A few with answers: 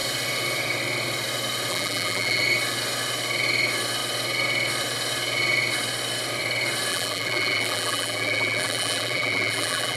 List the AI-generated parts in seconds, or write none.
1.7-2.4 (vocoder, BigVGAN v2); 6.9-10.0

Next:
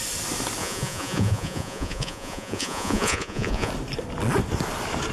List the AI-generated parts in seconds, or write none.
0.6-3.7 (vocoder, Vocos)

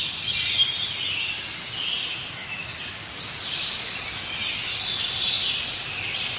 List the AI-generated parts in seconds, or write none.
2.0-3.1 (autoencoder, DAC-VAE)

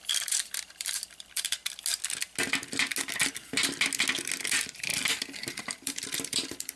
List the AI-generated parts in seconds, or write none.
0.0-1.6 (vocoder, BigVGAN v2); 4.5-4.9; 5.6-6.8

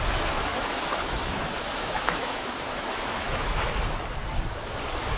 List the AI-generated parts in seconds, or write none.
0.5-3.6 (autoencoder, DAC-VAE)

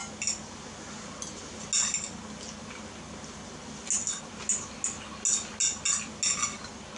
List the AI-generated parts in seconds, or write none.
none